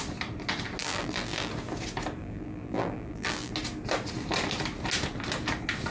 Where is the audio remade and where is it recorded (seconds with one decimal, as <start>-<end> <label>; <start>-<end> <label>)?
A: 0.0-0.8 recorded; 0.8-1.5 remade; 1.5-2.2 recorded; 2.2-3.5 remade; 3.5-5.9 recorded